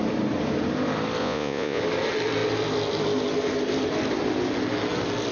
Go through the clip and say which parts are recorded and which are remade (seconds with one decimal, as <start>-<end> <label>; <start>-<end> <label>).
0.0-1.2 recorded; 1.2-1.8 remade; 1.8-5.3 recorded